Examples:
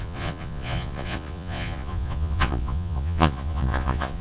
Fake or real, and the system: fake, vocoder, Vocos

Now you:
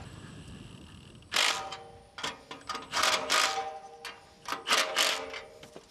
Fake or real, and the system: real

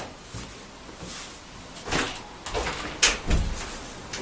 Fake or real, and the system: real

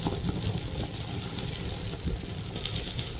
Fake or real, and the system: real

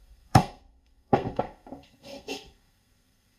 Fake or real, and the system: fake, codec, SNAC